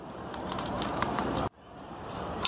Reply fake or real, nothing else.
fake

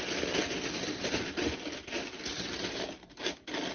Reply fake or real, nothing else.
real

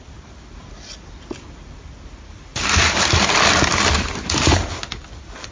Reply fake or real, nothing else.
real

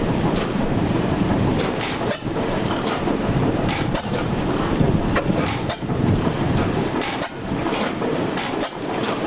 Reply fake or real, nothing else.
fake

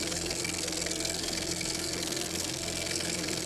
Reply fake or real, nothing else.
fake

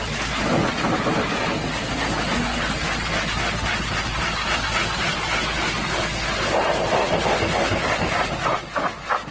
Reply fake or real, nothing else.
real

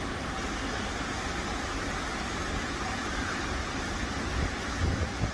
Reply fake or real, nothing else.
real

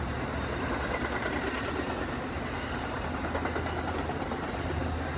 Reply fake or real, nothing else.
real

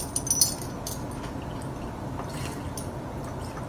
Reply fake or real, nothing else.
real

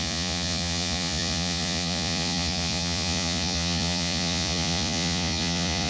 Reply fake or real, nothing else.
fake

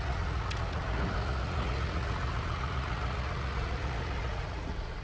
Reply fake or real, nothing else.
fake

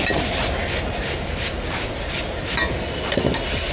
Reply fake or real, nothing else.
real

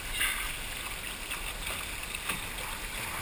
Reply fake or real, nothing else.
real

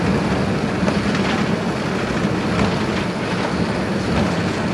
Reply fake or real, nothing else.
real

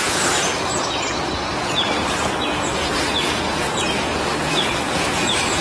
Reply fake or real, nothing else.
fake